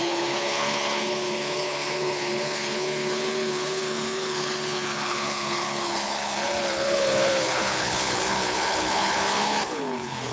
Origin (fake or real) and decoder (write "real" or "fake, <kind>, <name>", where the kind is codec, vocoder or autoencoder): fake, codec, HILCodec